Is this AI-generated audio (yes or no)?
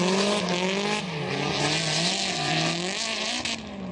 no